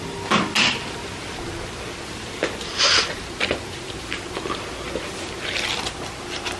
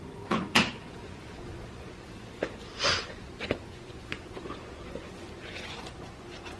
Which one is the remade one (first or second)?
second